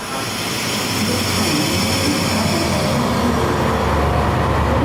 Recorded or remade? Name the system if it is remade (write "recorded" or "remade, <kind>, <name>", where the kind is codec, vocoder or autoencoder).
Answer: recorded